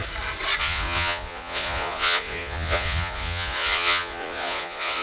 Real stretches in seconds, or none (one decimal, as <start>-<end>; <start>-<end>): 0.0-0.6